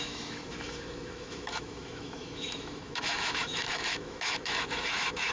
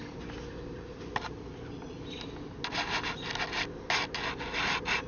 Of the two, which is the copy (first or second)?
first